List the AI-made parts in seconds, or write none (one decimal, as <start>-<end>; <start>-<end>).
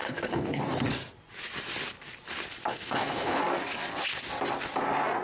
0.0-0.6; 2.7-3.4